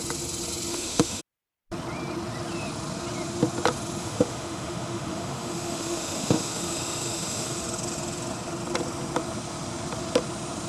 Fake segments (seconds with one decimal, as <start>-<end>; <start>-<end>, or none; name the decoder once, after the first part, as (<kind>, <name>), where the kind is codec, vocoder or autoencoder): 0.7-1.2 (autoencoder, DAC-VAE); 4.0-7.6